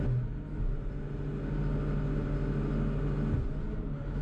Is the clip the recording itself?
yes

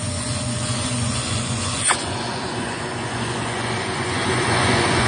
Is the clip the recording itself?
no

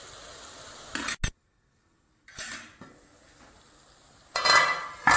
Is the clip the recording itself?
yes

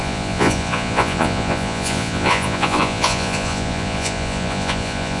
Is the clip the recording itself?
no